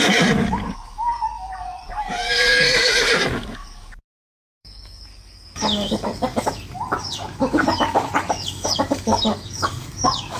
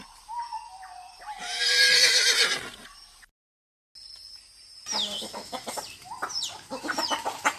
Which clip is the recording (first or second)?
second